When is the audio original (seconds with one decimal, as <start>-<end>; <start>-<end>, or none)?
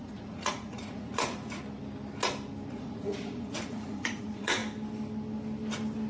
1.6-2.7; 4.6-6.1